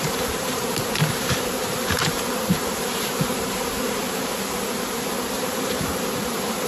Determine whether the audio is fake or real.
fake